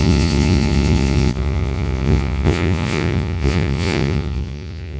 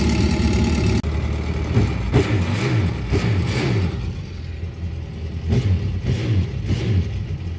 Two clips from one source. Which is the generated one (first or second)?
first